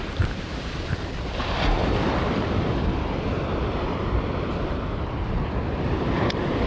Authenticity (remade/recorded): remade